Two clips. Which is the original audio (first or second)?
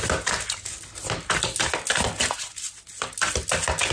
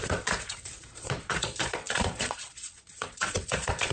first